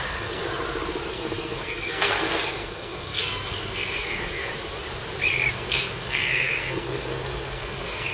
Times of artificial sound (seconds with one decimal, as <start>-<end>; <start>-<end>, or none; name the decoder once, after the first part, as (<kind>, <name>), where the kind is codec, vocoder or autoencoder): 0.0-0.4 (codec, SNAC); 1.1-4.5; 5.5-8.1